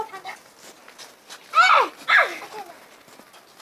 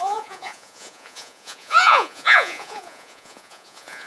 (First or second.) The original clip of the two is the first